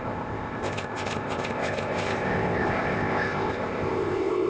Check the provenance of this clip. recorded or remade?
remade